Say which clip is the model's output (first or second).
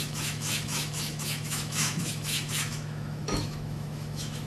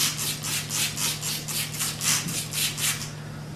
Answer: first